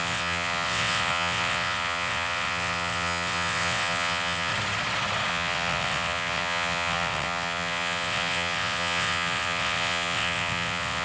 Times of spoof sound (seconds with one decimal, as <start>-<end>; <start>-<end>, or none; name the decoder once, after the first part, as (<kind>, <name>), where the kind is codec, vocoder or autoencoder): 0.0-4.5 (vocoder, WaveNeXt); 5.3-11.0